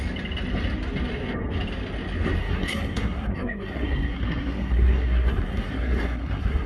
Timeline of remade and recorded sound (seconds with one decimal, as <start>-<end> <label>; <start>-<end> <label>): 0.0-2.4 recorded; 2.4-6.7 remade